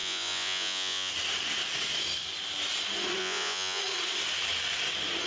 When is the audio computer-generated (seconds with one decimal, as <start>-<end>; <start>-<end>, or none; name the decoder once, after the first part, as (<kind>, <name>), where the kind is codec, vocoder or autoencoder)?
0.0-1.1 (vocoder, Vocos); 3.2-3.8